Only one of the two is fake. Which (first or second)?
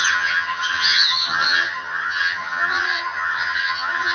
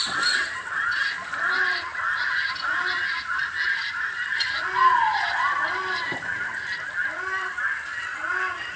first